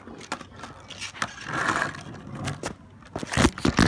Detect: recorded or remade recorded